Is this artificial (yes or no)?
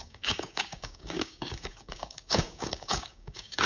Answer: yes